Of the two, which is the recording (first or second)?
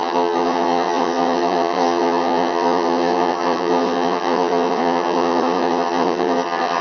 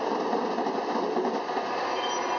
second